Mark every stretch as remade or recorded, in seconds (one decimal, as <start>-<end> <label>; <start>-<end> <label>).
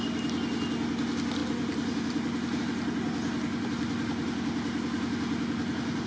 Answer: 0.0-1.4 recorded; 1.4-2.6 remade; 2.6-6.1 recorded